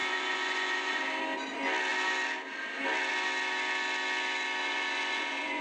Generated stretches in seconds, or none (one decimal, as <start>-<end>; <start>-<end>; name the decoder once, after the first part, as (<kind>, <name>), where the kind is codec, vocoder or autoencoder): 0.0-1.0 (vocoder, Vocos); 4.6-5.6